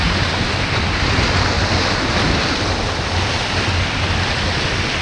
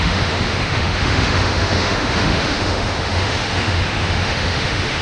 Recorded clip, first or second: first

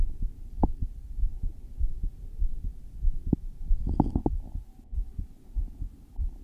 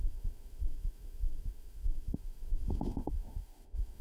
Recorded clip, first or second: first